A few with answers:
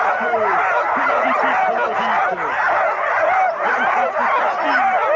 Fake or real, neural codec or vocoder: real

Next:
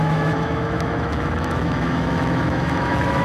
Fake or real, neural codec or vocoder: fake, autoencoder, DAC-VAE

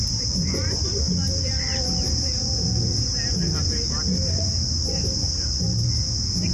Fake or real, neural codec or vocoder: fake, vocoder, BigVGAN v2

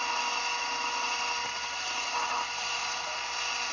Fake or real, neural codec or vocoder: real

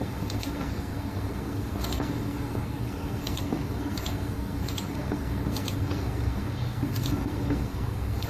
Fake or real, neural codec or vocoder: fake, codec, SNAC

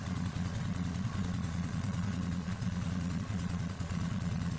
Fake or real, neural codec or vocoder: fake, vocoder, Vocos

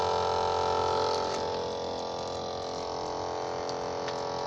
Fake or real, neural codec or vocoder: real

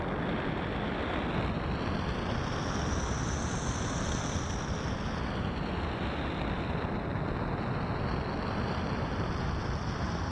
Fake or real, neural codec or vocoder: real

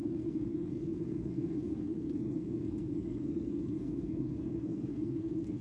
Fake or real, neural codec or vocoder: fake, codec, SNAC